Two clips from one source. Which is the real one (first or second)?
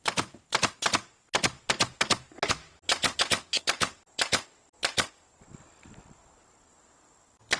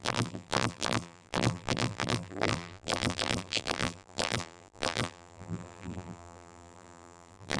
first